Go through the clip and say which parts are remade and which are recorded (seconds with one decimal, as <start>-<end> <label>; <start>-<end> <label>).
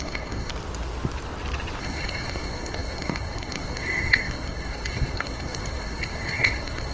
0.0-0.5 remade; 0.5-1.8 recorded; 1.8-6.9 remade